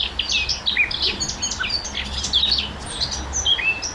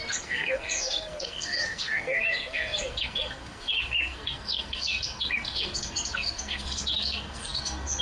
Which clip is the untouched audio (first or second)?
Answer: first